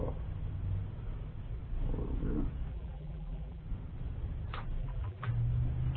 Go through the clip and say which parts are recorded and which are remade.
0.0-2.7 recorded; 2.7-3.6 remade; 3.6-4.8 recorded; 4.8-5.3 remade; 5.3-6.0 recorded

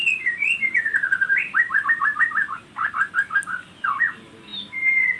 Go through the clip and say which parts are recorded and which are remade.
0.0-3.1 remade; 3.1-5.2 recorded